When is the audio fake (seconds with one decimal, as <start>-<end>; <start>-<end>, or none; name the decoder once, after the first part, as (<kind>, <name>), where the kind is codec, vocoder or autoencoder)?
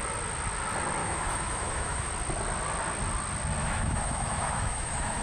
1.0-2.1 (autoencoder, DAC-VAE); 3.6-5.2